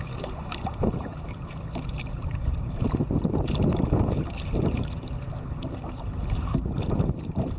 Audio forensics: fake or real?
fake